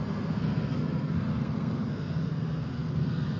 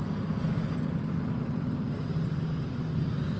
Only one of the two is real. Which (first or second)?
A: second